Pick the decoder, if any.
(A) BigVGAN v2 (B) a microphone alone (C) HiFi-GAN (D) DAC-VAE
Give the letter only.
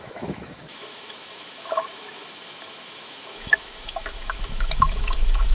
D